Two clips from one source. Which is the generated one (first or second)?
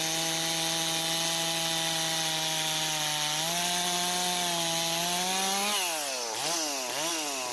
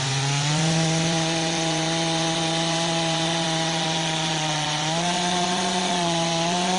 second